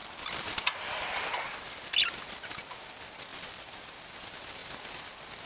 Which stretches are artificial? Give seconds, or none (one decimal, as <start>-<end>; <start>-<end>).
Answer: 0.0-1.8; 3.3-4.0